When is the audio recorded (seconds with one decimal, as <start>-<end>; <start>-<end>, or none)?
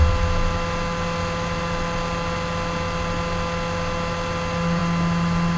0.0-5.6